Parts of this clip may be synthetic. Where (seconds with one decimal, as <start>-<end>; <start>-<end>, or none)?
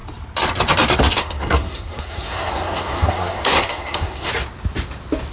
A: 1.1-4.3